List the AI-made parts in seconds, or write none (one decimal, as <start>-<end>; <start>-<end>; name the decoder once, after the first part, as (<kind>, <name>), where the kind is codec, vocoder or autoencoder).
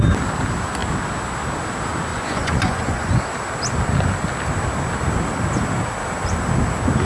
2.1-3.2 (vocoder, Vocos)